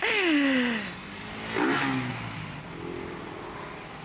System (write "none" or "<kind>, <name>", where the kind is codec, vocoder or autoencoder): none